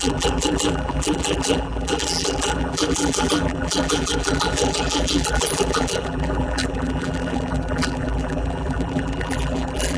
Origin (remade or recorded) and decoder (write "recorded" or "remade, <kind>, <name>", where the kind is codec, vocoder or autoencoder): remade, vocoder, BigVGAN v2